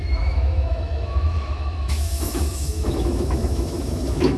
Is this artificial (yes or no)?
yes